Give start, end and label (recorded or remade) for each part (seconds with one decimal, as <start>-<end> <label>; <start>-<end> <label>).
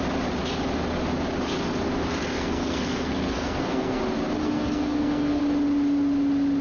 0.0-2.3 recorded; 2.3-4.0 remade; 4.0-4.4 recorded; 4.4-5.4 remade; 5.4-6.6 recorded